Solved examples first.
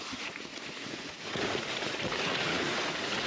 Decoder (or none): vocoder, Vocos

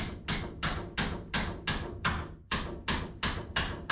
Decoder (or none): none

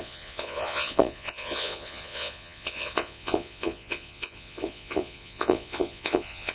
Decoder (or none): vocoder, Vocos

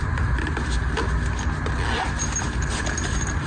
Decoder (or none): none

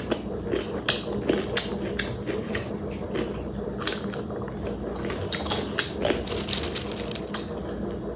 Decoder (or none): none